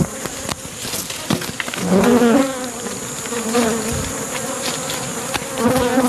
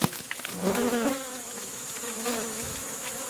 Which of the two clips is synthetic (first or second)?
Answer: second